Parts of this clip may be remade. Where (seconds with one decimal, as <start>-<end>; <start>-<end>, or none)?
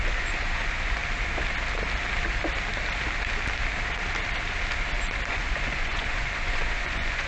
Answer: 0.0-1.0; 5.3-7.3